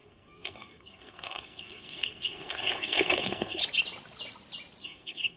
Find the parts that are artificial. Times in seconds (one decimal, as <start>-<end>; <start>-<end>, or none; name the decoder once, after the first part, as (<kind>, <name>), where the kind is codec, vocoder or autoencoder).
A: 0.0-3.6 (codec, SNAC); 4.8-5.4